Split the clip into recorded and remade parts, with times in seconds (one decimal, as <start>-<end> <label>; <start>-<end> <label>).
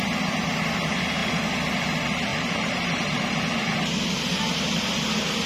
0.0-2.3 recorded; 2.3-3.4 remade; 3.4-5.5 recorded